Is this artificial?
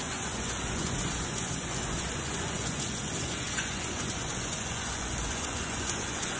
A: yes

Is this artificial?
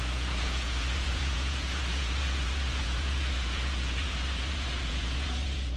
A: yes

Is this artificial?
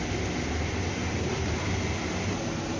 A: no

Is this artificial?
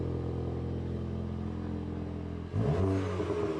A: no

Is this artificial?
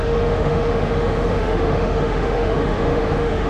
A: yes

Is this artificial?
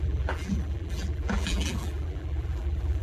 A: yes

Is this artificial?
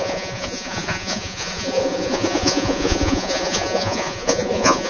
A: yes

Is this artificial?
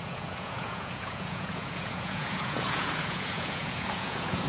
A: yes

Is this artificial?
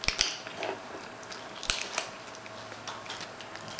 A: no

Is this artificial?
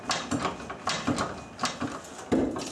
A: no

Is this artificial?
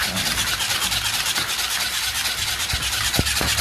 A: no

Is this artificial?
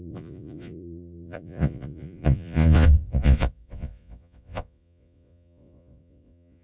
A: yes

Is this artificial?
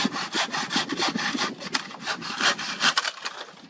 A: no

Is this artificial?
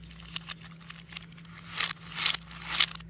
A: no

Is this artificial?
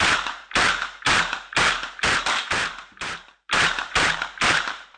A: yes